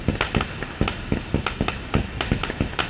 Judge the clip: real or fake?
real